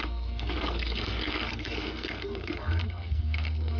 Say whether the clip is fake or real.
fake